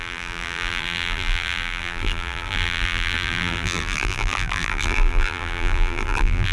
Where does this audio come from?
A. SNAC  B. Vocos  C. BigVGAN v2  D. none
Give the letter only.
C